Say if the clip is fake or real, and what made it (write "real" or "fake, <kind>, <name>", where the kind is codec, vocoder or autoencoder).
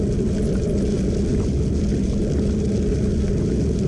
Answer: real